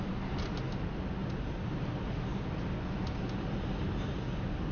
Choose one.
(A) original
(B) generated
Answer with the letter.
A